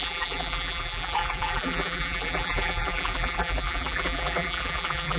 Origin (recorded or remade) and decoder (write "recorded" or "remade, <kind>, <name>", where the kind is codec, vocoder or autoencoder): remade, vocoder, BigVGAN v2